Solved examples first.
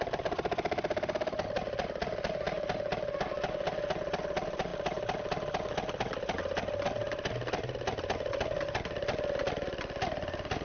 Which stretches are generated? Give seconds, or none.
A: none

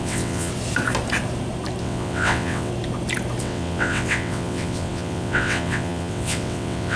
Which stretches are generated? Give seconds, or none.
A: 0.0-0.5; 1.8-2.7; 3.4-7.0